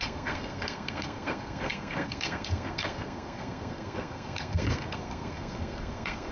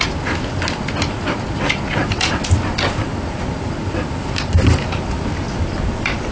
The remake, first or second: first